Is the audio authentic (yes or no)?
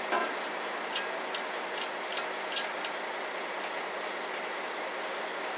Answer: yes